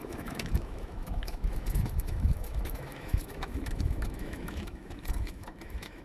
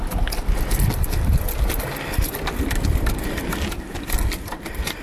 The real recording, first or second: second